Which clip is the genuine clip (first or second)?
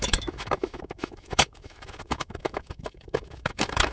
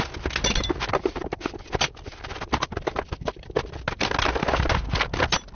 second